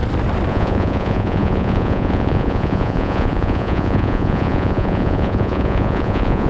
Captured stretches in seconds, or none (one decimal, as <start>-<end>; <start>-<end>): 0.0-0.5